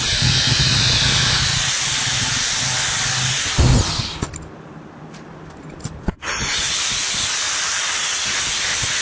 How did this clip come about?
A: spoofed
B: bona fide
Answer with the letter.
B